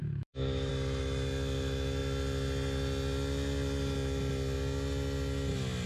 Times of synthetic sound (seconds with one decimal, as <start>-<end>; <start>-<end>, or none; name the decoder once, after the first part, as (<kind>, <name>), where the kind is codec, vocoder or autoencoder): 0.0-0.7 (autoencoder, DAC-VAE)